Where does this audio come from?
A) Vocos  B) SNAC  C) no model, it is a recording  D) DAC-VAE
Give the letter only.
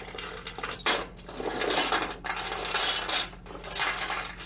C